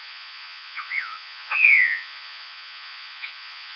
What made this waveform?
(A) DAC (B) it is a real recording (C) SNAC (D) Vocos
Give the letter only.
D